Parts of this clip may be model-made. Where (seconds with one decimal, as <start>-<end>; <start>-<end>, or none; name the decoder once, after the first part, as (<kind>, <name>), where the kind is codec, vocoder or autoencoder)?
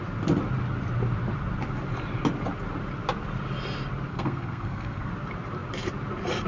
4.1-5.1 (codec, SNAC)